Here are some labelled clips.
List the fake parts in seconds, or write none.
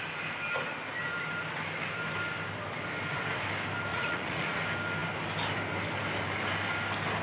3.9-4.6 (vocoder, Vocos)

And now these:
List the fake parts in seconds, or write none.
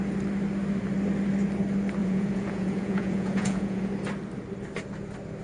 2.0-3.9 (vocoder, Vocos)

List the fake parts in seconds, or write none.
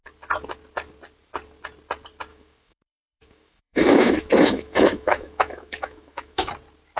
2.3-6.5 (autoencoder, DAC-VAE)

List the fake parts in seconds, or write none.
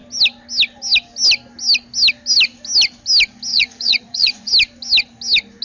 3.5-4.5 (vocoder, Vocos)